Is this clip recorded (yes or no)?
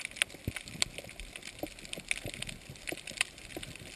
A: yes